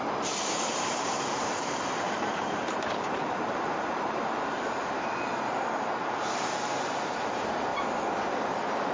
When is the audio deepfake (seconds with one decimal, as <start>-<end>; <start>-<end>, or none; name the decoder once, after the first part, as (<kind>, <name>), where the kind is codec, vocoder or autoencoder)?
0.0-7.7 (vocoder, BigVGAN v2); 8.3-8.9